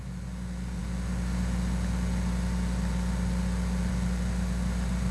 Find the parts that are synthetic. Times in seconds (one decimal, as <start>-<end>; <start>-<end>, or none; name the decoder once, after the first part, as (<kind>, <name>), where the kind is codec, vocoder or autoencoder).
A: none